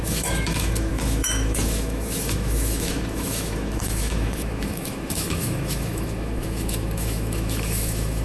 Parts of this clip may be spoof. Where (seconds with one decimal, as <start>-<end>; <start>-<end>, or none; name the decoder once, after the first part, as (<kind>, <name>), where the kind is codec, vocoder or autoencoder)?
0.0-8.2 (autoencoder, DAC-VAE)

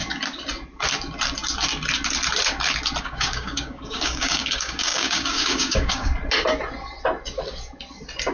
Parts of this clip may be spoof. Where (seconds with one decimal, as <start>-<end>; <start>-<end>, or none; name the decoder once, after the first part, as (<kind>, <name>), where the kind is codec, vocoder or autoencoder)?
3.0-6.1 (codec, DAC)

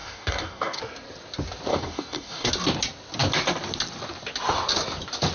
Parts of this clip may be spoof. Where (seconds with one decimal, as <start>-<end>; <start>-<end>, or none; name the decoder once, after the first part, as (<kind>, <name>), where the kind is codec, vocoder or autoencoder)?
0.0-0.8 (codec, DAC); 1.7-2.5

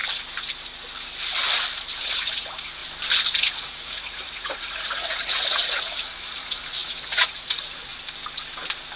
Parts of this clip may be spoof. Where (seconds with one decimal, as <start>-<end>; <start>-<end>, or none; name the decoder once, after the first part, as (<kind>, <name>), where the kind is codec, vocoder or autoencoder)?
2.0-2.8 (vocoder, Vocos); 3.4-7.9

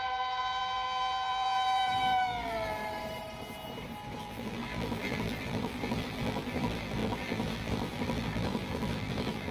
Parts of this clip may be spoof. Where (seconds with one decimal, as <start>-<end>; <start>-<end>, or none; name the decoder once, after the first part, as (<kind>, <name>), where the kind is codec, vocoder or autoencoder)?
0.0-2.8 (vocoder, BigVGAN v2); 4.2-9.5

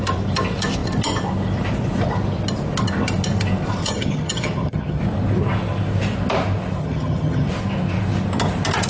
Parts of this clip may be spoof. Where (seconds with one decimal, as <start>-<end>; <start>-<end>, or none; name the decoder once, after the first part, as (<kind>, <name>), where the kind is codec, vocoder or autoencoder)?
3.8-5.0 (vocoder, HiFi-GAN); 6.8-7.5

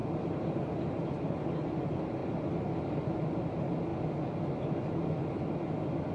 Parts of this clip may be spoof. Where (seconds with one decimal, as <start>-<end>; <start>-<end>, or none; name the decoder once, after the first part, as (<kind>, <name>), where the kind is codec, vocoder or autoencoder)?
none